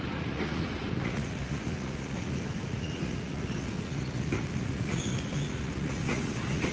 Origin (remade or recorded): remade